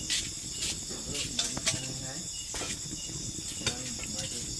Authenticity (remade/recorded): recorded